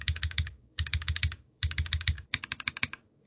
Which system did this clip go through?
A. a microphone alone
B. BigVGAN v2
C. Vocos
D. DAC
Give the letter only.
D